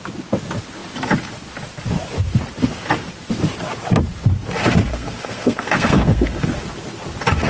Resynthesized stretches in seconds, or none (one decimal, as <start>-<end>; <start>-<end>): 4.9-6.5